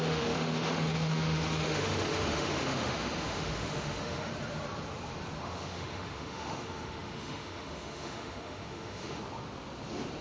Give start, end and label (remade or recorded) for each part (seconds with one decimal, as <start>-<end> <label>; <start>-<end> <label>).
0.0-4.3 remade; 4.3-5.4 recorded; 5.4-9.2 remade; 9.2-10.2 recorded